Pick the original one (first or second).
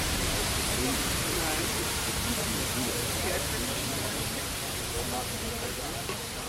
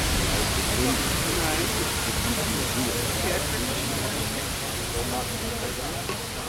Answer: second